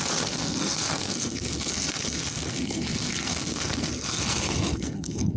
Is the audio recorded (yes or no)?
no